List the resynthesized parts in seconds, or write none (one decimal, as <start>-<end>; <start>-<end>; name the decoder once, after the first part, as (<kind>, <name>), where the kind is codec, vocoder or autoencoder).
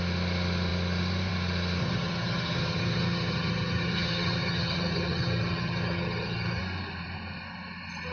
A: 1.8-6.6 (vocoder, HiFi-GAN)